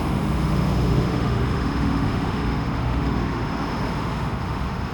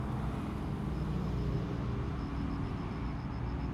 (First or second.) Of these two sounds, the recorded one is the second